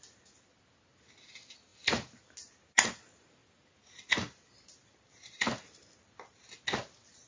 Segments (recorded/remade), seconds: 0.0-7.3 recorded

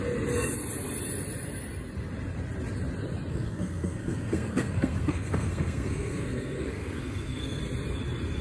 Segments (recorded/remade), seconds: 0.0-3.3 recorded; 3.3-7.6 remade; 7.6-8.4 recorded

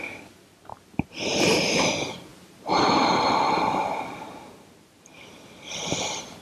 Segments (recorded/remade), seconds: 0.0-0.7 recorded; 0.7-1.6 remade; 1.6-2.3 recorded; 2.3-4.9 remade; 4.9-6.4 recorded

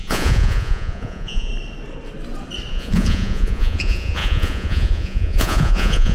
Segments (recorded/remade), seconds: 0.0-1.5 remade; 1.5-2.7 recorded; 2.7-6.1 remade

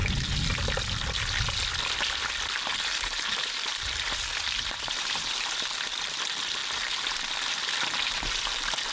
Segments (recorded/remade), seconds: 0.0-2.8 recorded; 2.8-8.9 remade

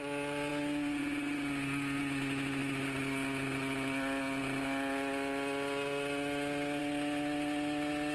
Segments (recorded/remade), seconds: 0.0-8.1 recorded

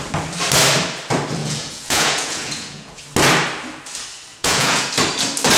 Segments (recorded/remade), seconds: 0.0-1.4 recorded; 1.4-3.0 remade; 3.0-4.3 recorded; 4.3-4.9 remade; 4.9-5.6 recorded

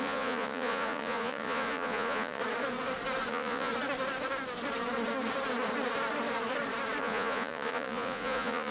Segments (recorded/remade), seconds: 0.0-2.4 remade; 2.4-3.3 recorded; 3.3-3.7 remade; 3.7-7.0 recorded; 7.0-8.7 remade